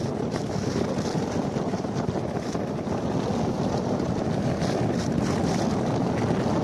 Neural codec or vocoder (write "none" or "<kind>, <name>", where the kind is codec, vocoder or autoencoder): none